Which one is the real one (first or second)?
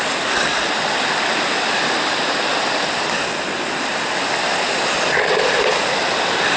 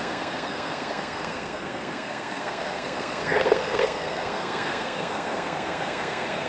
first